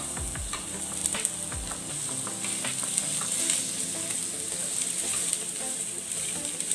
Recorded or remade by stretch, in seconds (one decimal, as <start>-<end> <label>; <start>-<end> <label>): 0.0-1.0 remade; 1.0-4.8 recorded; 4.8-6.7 remade